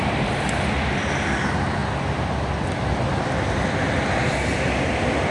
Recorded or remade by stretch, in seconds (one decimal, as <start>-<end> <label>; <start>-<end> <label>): 0.0-5.3 recorded